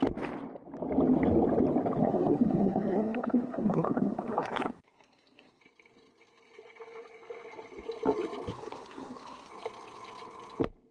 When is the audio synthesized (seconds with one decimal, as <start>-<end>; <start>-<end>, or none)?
2.0-5.6; 8.5-9.5